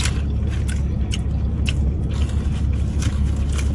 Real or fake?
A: real